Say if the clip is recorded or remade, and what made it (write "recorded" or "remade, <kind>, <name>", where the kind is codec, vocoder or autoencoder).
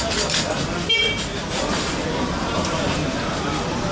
recorded